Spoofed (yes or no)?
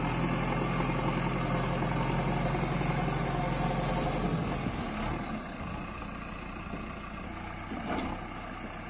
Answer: no